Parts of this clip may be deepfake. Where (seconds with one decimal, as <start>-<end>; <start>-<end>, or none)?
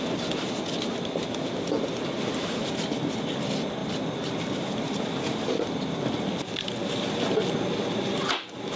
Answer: none